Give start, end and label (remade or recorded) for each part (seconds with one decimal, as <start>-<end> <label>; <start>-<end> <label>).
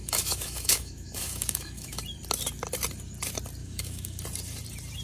0.0-2.0 remade; 2.0-3.6 recorded; 3.6-4.2 remade; 4.2-5.0 recorded